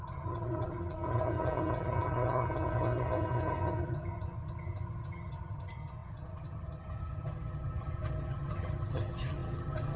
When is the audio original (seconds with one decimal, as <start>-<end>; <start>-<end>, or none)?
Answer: none

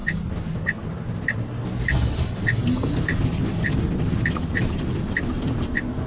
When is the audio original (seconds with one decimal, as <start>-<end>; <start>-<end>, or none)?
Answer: 0.0-6.1